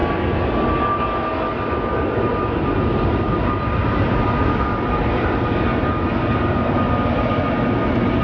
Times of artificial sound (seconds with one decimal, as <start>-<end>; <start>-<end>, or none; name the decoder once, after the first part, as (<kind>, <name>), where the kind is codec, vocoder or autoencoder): none